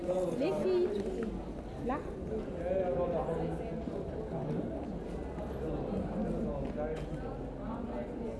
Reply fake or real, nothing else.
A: real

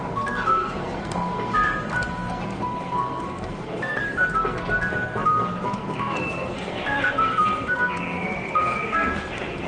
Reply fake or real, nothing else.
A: fake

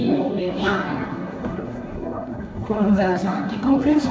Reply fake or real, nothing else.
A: fake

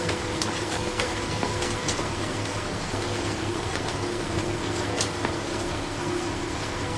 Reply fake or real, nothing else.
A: fake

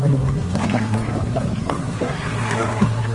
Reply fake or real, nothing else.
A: fake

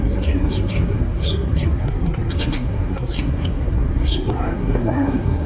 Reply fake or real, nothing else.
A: fake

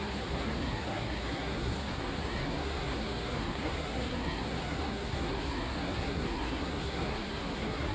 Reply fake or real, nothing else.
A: fake